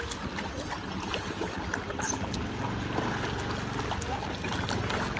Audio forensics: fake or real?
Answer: real